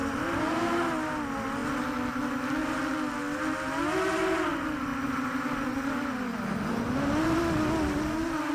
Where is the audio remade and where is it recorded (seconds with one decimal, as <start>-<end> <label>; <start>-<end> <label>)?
0.0-8.5 recorded